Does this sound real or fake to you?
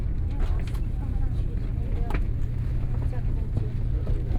real